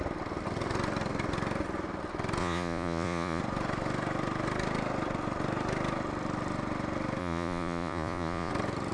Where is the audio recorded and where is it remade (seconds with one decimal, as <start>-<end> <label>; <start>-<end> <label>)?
0.0-2.4 recorded; 2.4-3.4 remade; 3.4-7.2 recorded; 7.2-8.5 remade; 8.5-8.9 recorded